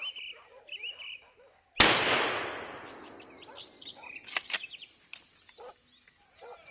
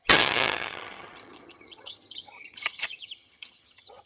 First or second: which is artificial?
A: second